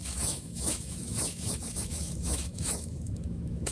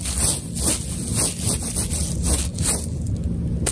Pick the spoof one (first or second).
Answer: first